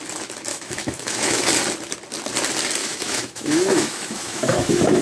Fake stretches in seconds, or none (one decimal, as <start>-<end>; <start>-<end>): 0.5-1.4; 2.8-5.0